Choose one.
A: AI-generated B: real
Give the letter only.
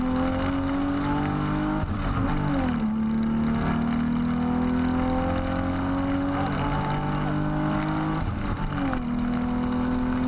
B